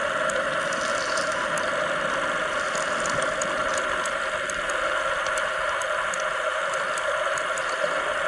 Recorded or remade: recorded